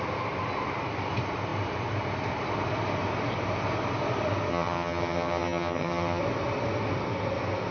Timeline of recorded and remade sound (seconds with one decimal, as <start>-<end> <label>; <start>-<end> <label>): 0.0-4.5 recorded; 4.5-6.2 remade; 6.2-7.7 recorded

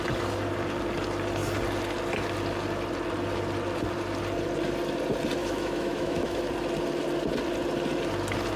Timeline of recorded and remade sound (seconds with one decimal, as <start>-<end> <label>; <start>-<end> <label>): 0.0-5.4 recorded; 5.4-6.4 remade; 6.4-8.6 recorded

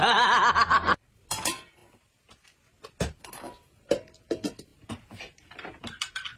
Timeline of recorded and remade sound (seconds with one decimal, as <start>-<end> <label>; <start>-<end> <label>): 0.0-4.7 recorded; 4.7-5.8 remade; 5.8-6.4 recorded

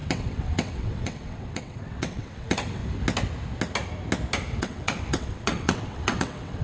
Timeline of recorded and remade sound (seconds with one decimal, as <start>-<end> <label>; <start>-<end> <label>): 0.0-2.8 remade; 2.8-4.6 recorded; 4.6-6.6 remade